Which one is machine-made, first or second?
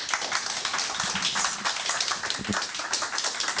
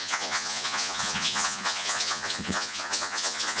second